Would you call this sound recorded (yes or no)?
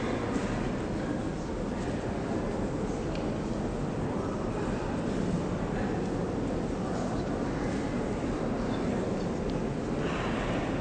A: yes